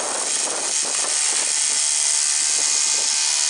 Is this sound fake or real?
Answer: real